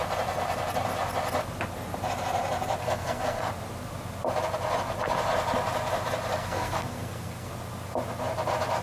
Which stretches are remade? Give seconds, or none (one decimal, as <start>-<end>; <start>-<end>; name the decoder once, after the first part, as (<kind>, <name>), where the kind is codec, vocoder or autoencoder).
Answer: 2.8-3.5 (codec, SNAC); 6.3-7.5

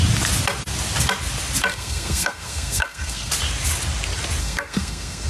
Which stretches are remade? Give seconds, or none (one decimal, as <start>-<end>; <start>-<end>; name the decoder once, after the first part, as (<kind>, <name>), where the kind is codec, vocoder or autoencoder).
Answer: 1.7-3.3 (codec, SNAC); 4.4-5.3

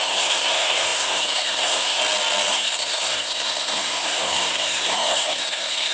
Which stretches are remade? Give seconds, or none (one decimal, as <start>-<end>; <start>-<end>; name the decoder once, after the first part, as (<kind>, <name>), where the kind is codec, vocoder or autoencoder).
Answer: 0.0-2.0 (codec, SNAC); 2.5-5.9

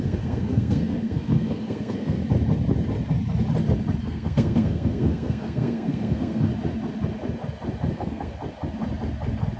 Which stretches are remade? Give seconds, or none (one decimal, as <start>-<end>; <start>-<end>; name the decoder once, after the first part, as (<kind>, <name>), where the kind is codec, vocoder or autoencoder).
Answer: 0.0-2.2 (codec, SNAC); 4.0-6.5; 7.9-8.3